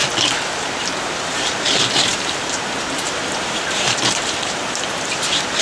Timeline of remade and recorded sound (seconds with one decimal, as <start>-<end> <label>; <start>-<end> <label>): 0.0-0.6 recorded; 0.6-5.6 remade